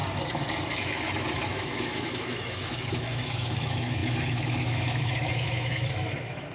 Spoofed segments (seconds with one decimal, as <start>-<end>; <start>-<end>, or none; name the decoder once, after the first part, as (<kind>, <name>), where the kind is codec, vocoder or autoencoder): 0.8-6.5 (autoencoder, DAC-VAE)